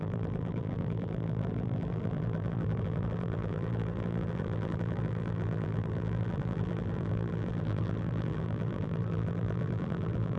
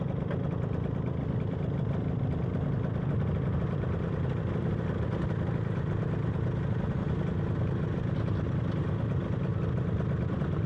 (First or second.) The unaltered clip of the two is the second